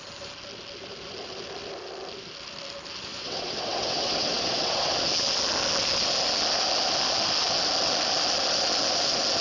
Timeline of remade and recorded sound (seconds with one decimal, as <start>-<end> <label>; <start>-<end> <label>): 0.0-3.1 recorded; 3.1-4.9 remade; 4.9-9.4 recorded